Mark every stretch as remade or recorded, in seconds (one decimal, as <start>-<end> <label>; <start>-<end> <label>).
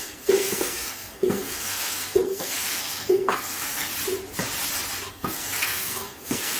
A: 0.0-3.9 remade; 3.9-5.1 recorded; 5.1-6.6 remade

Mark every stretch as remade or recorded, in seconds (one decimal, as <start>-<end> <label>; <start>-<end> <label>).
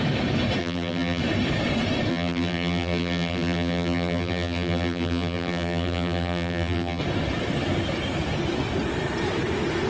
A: 0.0-0.6 recorded; 0.6-1.2 remade; 1.2-2.1 recorded; 2.1-7.0 remade; 7.0-9.9 recorded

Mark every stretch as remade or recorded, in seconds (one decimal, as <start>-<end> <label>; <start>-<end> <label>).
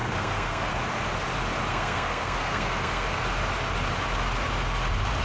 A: 0.0-0.7 remade; 0.7-1.7 recorded; 1.7-3.2 remade; 3.2-5.2 recorded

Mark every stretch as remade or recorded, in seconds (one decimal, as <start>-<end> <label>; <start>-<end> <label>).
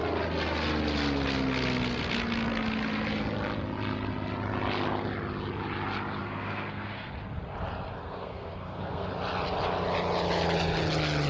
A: 0.0-6.2 recorded; 6.2-7.1 remade; 7.1-8.0 recorded; 8.0-9.1 remade; 9.1-11.3 recorded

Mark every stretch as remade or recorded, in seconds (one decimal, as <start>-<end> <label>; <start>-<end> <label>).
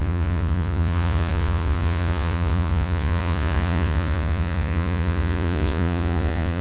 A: 0.0-6.6 remade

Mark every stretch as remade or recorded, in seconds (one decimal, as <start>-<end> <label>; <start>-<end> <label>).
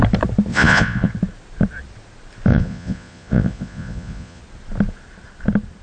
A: 0.0-0.5 recorded; 0.5-1.1 remade; 1.1-2.5 recorded; 2.5-4.4 remade; 4.4-5.8 recorded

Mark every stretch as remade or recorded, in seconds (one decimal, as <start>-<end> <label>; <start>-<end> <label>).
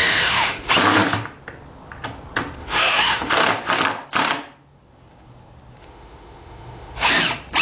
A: 0.0-0.7 remade; 0.7-2.6 recorded; 2.6-3.3 remade; 3.3-5.8 recorded; 5.8-7.1 remade; 7.1-7.6 recorded